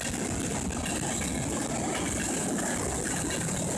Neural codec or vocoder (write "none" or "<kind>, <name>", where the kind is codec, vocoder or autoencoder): none